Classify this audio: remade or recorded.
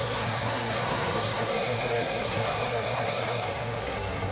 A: remade